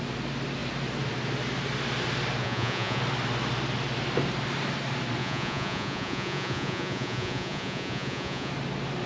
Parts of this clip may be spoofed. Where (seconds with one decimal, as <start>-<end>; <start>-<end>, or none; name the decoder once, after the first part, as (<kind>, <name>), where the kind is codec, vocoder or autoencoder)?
2.4-3.0 (vocoder, Vocos); 5.2-8.5